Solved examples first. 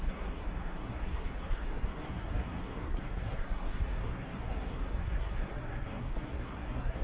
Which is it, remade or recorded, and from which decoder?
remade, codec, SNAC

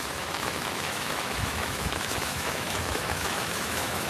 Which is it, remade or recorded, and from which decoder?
remade, autoencoder, DAC-VAE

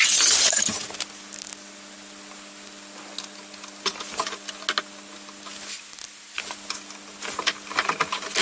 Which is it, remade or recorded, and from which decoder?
recorded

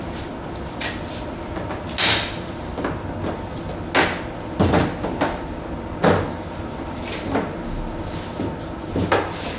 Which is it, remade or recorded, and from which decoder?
recorded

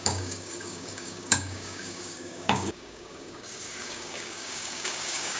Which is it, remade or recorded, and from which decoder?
remade, codec, DAC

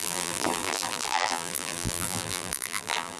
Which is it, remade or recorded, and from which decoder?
remade, vocoder, BigVGAN v2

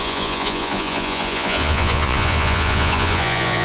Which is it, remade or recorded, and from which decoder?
remade, vocoder, Vocos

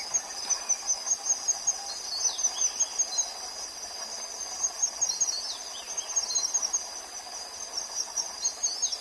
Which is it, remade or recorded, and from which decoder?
recorded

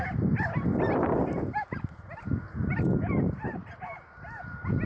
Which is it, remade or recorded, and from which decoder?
recorded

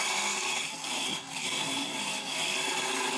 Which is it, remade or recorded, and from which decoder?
remade, codec, SNAC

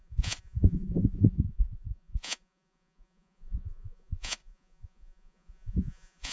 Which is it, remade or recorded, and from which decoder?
remade, vocoder, Vocos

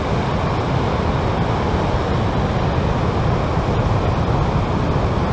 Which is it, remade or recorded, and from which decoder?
recorded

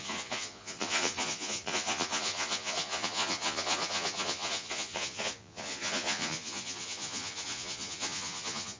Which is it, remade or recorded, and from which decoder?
remade, vocoder, Vocos